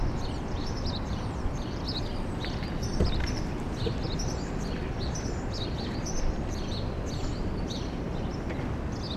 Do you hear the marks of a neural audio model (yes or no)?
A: yes